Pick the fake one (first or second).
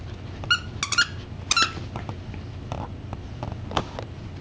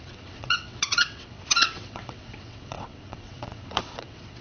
second